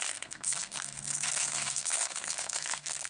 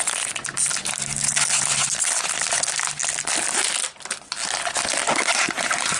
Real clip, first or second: second